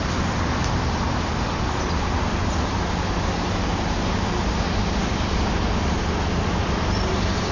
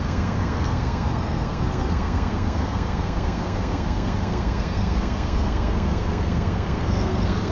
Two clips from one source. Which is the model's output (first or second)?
second